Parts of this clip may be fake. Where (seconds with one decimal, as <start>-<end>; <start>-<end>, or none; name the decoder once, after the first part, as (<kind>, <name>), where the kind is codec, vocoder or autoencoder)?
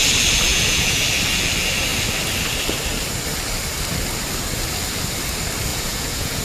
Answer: 0.5-1.0 (vocoder, Vocos); 5.7-6.4